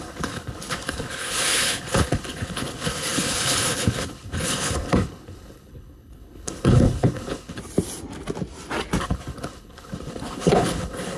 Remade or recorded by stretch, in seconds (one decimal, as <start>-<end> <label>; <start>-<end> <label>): 0.0-7.6 remade; 7.6-9.0 recorded; 9.0-11.2 remade